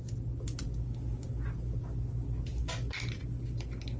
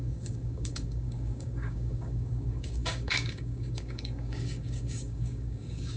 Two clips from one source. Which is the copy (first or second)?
second